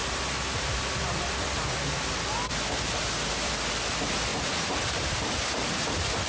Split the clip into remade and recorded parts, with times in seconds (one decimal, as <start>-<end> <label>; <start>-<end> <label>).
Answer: 0.0-3.5 remade; 3.5-4.3 recorded; 4.3-5.0 remade; 5.0-6.3 recorded